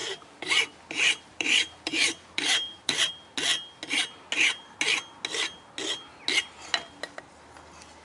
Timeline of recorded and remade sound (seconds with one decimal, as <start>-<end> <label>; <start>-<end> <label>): 0.0-3.1 remade; 3.1-8.0 recorded